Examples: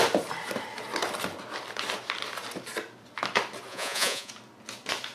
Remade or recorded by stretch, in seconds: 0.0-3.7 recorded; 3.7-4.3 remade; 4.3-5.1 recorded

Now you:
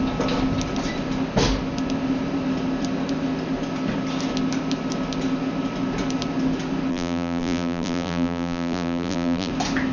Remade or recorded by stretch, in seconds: 0.0-6.9 recorded; 6.9-9.5 remade; 9.5-9.9 recorded